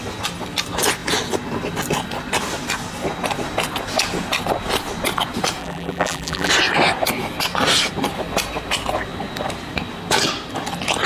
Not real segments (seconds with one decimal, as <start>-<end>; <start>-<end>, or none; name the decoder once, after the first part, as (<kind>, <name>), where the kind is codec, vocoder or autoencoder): 5.6-6.5 (vocoder, BigVGAN v2)